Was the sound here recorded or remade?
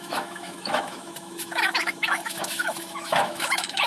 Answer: remade